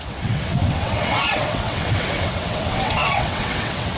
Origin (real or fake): fake